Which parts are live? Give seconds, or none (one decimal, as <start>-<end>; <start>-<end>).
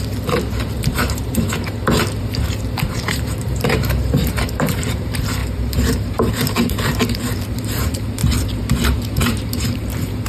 1.6-2.2; 8.2-9.2